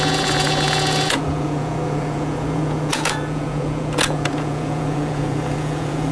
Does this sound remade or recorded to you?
remade